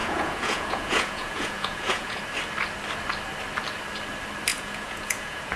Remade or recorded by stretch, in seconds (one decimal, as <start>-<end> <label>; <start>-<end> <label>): 0.0-2.2 remade; 2.2-4.5 recorded; 4.5-5.6 remade